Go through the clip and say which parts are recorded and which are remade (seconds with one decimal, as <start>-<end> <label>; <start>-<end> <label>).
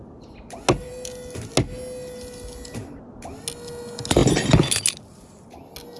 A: 0.0-6.0 recorded